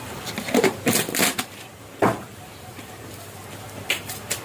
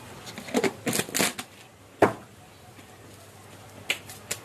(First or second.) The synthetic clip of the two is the first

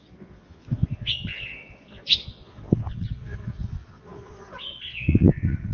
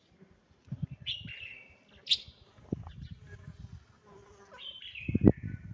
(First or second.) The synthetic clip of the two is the first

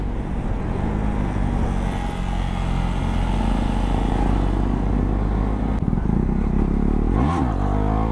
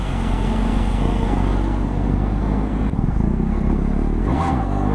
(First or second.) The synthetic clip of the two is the second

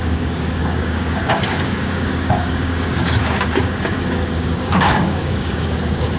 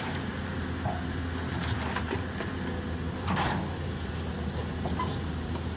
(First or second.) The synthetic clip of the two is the first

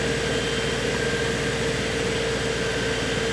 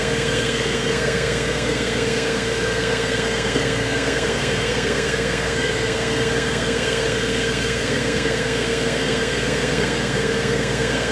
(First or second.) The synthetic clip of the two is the second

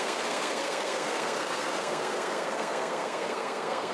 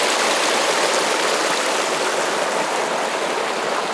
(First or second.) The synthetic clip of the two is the first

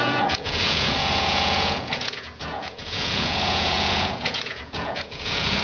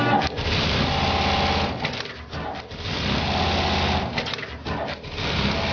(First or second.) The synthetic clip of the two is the first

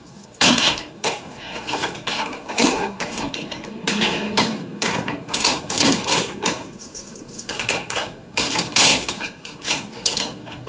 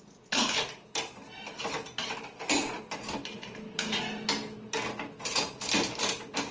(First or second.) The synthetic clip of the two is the first